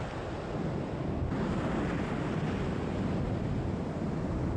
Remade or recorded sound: recorded